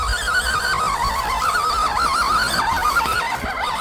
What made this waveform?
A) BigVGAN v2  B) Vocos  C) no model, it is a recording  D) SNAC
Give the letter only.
C